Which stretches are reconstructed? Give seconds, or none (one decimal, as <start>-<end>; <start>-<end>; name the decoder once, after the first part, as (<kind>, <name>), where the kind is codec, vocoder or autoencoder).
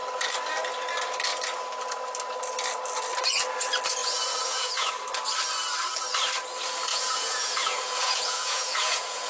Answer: 4.0-4.9 (vocoder, Vocos); 6.9-9.3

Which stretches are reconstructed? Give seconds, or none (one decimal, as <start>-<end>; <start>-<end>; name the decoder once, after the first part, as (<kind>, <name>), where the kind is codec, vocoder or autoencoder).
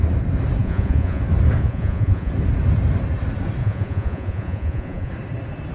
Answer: 0.6-1.2 (vocoder, Vocos); 1.6-2.3; 3.6-5.1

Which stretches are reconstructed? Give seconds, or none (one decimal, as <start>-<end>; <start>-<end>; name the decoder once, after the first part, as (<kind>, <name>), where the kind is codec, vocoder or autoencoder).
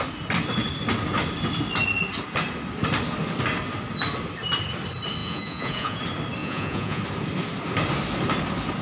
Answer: 5.2-6.0 (vocoder, Vocos); 6.4-7.0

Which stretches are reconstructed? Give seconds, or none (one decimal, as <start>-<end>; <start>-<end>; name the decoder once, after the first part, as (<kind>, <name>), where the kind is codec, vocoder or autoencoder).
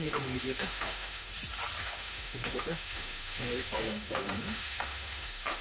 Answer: 0.0-1.3 (autoencoder, DAC-VAE); 1.8-5.6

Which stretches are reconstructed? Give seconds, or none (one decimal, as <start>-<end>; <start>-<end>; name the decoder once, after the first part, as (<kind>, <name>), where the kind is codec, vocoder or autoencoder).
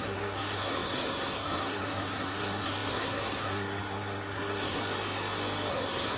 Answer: 0.0-4.8 (codec, SNAC); 5.7-6.2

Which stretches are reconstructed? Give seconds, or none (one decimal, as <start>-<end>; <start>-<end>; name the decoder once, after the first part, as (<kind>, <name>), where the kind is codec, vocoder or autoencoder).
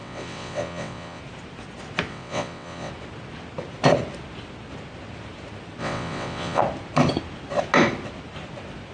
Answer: 0.0-1.2 (vocoder, WaveNeXt); 2.1-2.9; 5.8-6.6